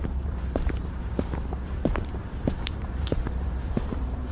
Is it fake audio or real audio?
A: fake